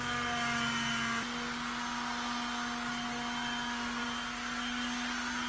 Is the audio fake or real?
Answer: real